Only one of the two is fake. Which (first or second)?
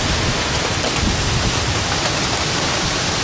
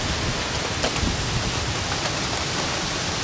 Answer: second